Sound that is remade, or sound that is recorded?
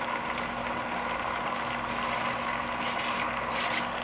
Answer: recorded